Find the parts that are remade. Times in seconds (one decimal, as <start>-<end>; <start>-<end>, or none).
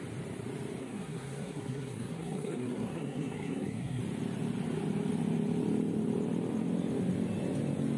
0.8-4.0